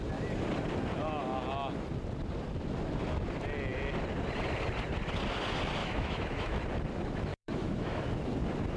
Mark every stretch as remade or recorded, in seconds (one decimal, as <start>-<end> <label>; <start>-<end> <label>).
0.0-5.8 recorded; 5.8-6.6 remade; 6.6-7.3 recorded; 7.3-8.0 remade; 8.0-8.8 recorded